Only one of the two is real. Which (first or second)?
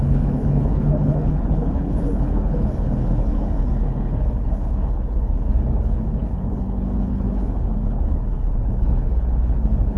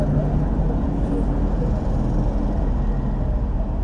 second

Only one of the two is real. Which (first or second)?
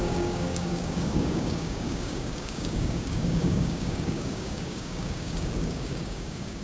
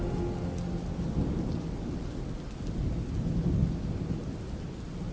second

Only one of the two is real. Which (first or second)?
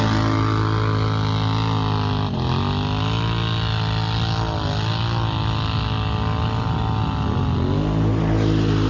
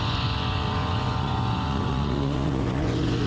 first